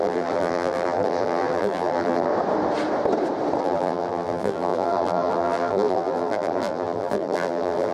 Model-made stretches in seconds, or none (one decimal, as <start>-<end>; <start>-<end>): 0.0-2.3; 3.6-7.9